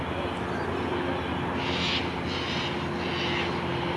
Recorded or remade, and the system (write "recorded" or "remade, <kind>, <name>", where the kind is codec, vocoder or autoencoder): recorded